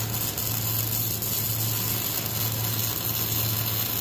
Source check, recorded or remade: recorded